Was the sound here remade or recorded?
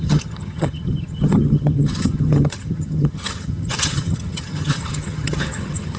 remade